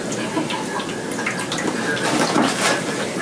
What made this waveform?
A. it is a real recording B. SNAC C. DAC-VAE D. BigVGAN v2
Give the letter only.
A